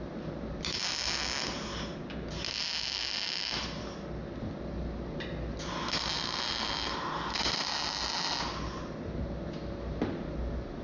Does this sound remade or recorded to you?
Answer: recorded